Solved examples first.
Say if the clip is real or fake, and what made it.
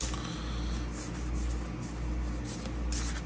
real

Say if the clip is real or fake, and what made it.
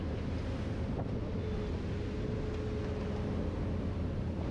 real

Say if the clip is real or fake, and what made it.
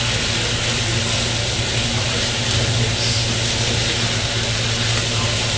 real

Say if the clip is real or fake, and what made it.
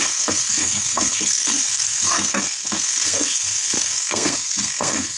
fake, codec, SNAC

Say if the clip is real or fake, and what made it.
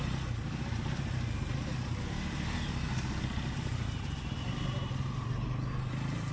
real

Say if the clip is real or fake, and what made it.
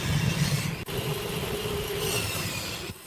real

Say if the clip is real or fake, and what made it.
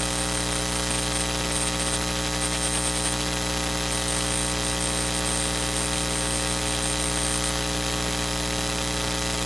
real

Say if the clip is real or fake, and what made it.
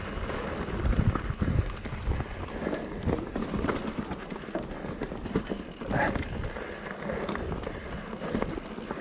real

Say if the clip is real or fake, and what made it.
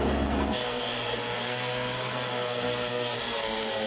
fake, codec, SNAC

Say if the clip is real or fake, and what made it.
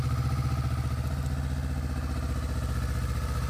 real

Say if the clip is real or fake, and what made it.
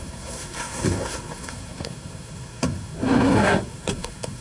fake, codec, SNAC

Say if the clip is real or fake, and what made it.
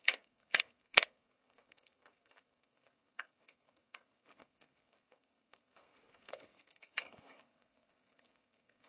fake, codec, SNAC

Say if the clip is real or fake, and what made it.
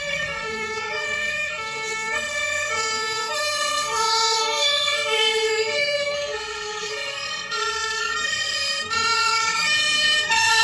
fake, codec, SNAC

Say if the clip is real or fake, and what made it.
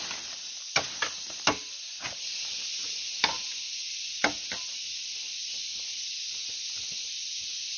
real